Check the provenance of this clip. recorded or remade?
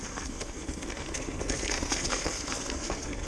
remade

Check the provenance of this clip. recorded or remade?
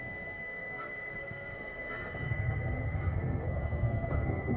remade